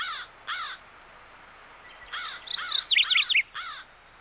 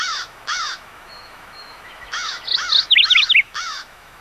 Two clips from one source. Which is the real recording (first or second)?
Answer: first